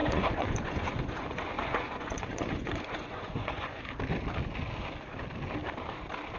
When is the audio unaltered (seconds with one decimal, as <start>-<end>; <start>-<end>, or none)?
3.8-6.4

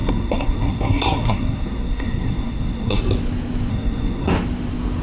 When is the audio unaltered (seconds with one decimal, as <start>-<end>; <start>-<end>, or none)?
3.0-3.7; 4.3-5.0

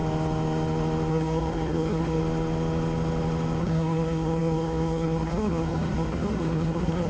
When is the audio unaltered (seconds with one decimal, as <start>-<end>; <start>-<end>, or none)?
0.0-1.1; 2.2-3.6

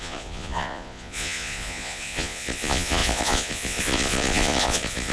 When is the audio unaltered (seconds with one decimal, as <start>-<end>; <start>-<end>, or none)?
none